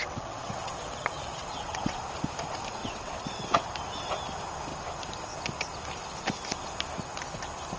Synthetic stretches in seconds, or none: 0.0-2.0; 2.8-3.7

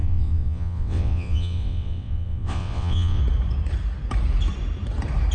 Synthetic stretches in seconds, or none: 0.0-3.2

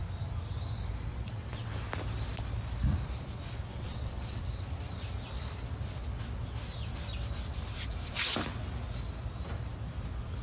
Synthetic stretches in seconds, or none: 1.1-1.7; 3.7-4.4